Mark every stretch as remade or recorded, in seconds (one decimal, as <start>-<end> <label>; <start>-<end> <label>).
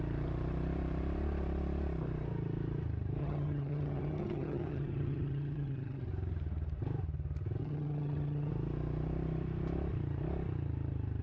0.0-3.2 recorded; 3.2-6.1 remade; 6.1-7.6 recorded; 7.6-8.5 remade; 8.5-11.2 recorded